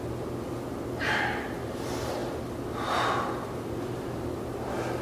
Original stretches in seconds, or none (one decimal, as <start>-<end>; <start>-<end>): 0.0-5.0

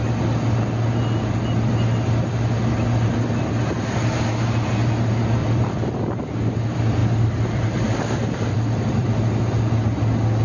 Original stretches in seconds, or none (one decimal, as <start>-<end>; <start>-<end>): 0.0-5.4; 6.2-7.0; 9.2-10.4

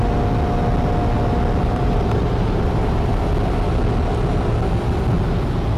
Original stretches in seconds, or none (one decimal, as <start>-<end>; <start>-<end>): 0.0-1.6; 3.2-5.8

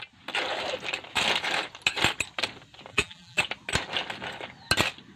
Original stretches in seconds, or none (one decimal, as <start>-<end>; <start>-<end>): 0.0-2.9; 3.4-5.2

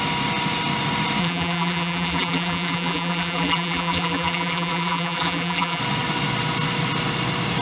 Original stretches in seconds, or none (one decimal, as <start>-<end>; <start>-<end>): 0.0-1.2; 5.8-7.6

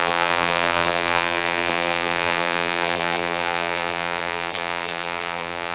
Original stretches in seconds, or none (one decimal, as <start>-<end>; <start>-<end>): none